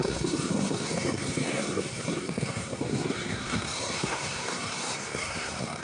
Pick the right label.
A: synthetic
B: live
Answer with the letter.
A